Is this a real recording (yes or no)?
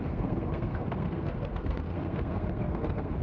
no